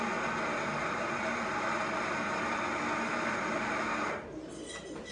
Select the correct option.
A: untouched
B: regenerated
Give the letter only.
A